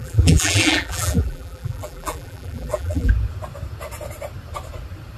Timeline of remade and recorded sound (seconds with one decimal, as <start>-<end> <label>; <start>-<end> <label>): 0.0-3.1 remade; 3.1-5.2 recorded